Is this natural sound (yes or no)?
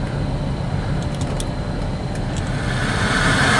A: yes